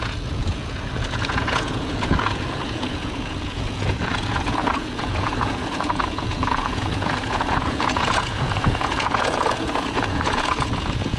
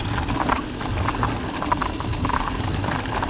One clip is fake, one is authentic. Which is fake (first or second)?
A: first